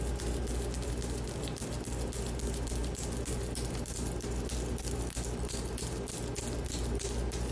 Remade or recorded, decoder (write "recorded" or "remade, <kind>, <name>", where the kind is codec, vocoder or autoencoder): recorded